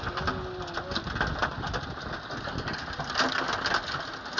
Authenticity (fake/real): real